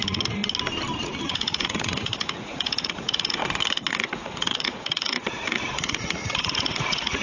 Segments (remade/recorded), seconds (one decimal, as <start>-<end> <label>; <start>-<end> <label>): 0.0-0.4 remade; 0.4-1.0 recorded; 1.0-3.4 remade; 3.4-3.9 recorded; 3.9-7.2 remade